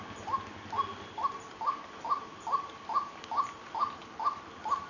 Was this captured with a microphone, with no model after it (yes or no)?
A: yes